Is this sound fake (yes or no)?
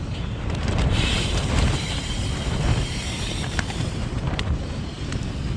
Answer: yes